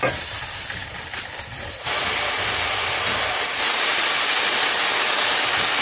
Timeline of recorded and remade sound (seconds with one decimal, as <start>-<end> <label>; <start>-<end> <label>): 0.0-0.8 recorded; 0.8-4.3 remade; 4.3-5.8 recorded